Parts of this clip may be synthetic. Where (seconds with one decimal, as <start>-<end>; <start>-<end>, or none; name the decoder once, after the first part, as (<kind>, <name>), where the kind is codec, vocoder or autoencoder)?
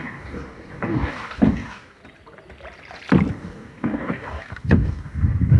0.0-2.0 (codec, DAC); 3.3-5.6